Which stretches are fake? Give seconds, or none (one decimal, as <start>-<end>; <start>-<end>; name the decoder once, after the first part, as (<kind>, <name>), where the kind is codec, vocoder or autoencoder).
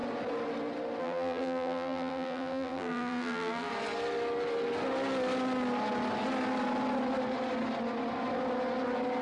1.0-3.7 (vocoder, BigVGAN v2)